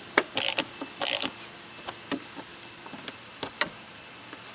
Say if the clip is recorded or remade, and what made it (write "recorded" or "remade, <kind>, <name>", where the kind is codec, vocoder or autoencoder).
recorded